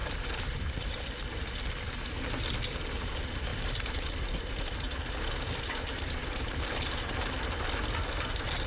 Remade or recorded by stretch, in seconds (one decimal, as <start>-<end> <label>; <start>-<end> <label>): 0.0-1.1 remade; 1.1-3.5 recorded; 3.5-6.9 remade; 6.9-8.7 recorded